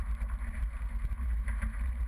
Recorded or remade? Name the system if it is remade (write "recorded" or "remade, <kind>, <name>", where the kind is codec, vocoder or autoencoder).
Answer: remade, vocoder, BigVGAN v2